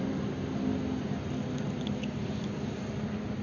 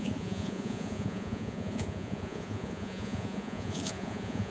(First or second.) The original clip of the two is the first